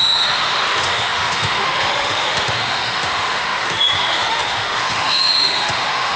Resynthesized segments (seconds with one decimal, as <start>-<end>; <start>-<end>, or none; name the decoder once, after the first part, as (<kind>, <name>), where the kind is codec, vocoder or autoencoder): 0.0-6.2 (autoencoder, DAC-VAE)